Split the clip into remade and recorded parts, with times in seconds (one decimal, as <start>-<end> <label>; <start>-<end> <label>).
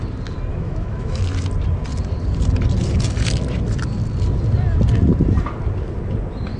0.0-0.5 recorded; 0.5-1.2 remade; 1.2-6.6 recorded